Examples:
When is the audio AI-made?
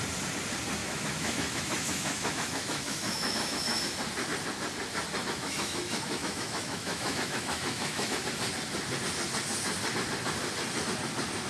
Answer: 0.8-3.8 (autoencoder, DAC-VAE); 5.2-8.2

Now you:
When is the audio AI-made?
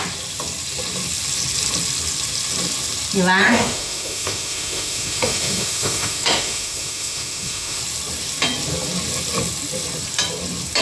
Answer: 3.4-7.8 (autoencoder, DAC-VAE)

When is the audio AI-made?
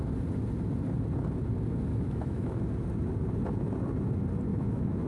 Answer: 1.9-2.6 (autoencoder, DAC-VAE); 4.5-5.1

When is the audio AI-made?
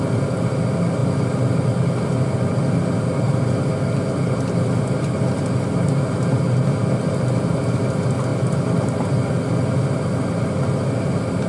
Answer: none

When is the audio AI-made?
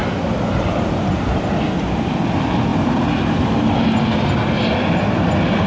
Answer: none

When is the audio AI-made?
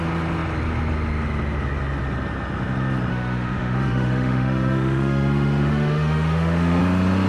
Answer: 3.1-6.8 (autoencoder, DAC-VAE)